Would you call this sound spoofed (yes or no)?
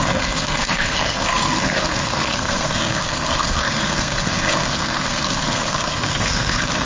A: yes